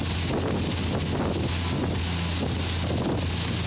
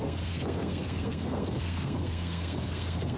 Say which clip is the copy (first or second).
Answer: second